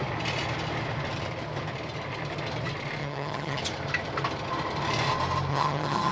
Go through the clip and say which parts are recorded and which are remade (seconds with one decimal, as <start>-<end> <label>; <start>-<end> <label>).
0.0-3.0 recorded; 3.0-3.6 remade; 3.6-5.5 recorded; 5.5-6.1 remade